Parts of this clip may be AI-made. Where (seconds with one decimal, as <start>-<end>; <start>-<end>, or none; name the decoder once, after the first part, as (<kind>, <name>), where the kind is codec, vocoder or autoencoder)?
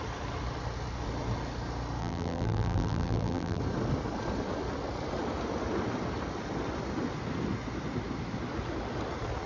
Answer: 2.0-3.6 (vocoder, BigVGAN v2)